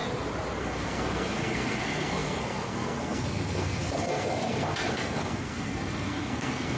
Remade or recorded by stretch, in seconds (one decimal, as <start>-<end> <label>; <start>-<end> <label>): 0.0-0.6 recorded; 0.6-6.8 remade

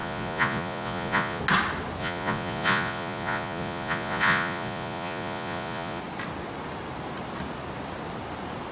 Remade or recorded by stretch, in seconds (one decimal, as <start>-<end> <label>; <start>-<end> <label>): 0.0-1.4 remade; 1.4-2.0 recorded; 2.0-6.0 remade; 6.0-8.7 recorded

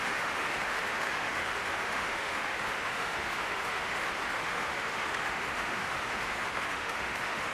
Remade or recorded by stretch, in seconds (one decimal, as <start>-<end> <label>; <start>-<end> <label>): 0.0-7.5 remade

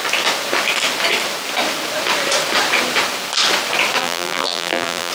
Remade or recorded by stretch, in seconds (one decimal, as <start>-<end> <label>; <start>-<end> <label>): 0.0-4.0 recorded; 4.0-5.1 remade

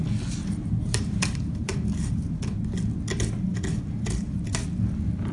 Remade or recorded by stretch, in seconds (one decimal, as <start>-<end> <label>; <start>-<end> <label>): 0.0-0.4 recorded; 0.4-1.9 remade; 1.9-5.3 recorded